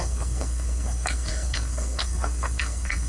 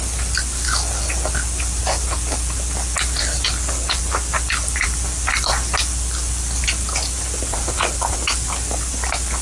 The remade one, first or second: first